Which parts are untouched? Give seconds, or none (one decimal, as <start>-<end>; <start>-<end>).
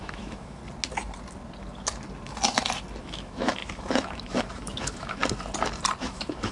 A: 0.6-3.0; 5.2-6.0